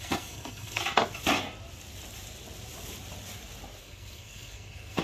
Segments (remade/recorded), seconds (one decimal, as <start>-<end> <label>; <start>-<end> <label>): 0.0-0.8 remade; 0.8-3.8 recorded; 3.8-5.0 remade